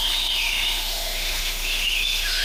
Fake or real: fake